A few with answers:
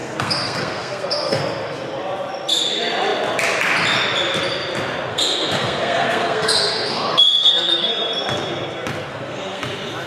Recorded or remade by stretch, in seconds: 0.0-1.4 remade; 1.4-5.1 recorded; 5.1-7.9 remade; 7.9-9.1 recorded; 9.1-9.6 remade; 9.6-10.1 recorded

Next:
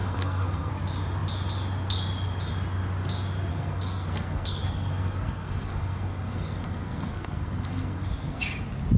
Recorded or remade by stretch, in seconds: 0.0-0.7 remade; 0.7-3.5 recorded; 3.5-8.4 remade; 8.4-9.0 recorded

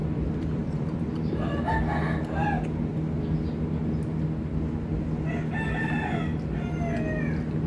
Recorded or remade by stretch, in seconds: 0.0-1.7 remade; 1.7-7.7 recorded

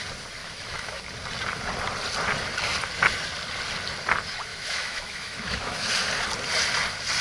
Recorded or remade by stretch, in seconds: 0.0-0.4 recorded; 0.4-1.0 remade; 1.0-4.5 recorded; 4.5-5.9 remade; 5.9-7.2 recorded

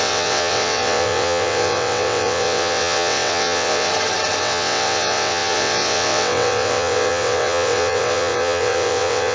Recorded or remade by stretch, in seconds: 0.0-3.9 remade; 3.9-4.4 recorded; 4.4-9.3 remade